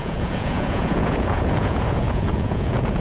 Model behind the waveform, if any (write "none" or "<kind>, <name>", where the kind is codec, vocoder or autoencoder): vocoder, Vocos